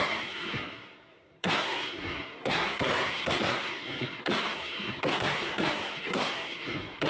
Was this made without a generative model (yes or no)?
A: no